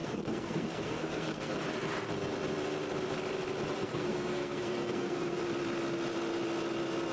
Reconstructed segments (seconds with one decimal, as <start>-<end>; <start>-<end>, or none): 0.0-1.6; 3.8-5.4